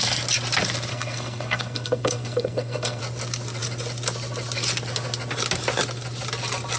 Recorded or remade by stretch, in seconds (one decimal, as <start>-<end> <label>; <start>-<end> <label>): 0.0-0.9 recorded; 0.9-3.0 remade; 3.0-6.8 recorded